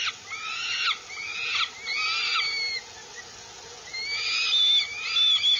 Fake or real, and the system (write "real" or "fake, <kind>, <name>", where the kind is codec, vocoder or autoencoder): real